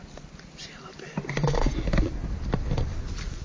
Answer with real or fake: real